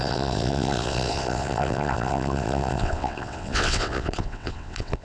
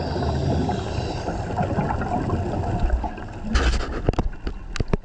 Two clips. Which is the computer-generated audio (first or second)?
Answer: first